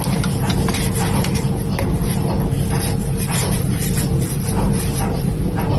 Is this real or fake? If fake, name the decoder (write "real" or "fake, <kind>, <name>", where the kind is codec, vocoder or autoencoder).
real